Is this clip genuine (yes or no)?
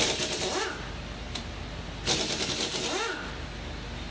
yes